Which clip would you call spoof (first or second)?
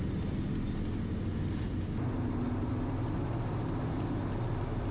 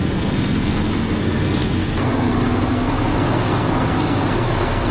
second